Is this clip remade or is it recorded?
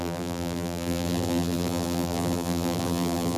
remade